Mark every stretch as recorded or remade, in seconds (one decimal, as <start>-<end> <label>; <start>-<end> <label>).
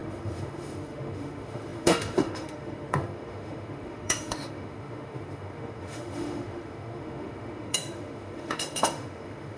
0.0-9.6 remade